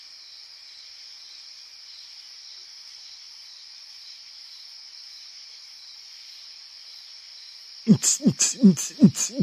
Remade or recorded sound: recorded